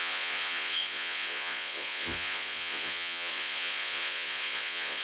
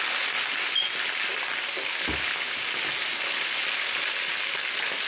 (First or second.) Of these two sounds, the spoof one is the first